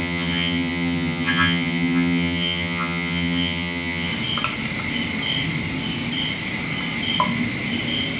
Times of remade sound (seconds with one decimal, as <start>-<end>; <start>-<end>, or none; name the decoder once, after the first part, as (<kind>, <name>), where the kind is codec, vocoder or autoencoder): 0.0-4.1 (vocoder, HiFi-GAN)